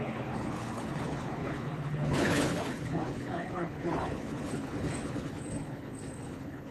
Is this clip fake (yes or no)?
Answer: yes